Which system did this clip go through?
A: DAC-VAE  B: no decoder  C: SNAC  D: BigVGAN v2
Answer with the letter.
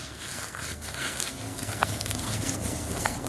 C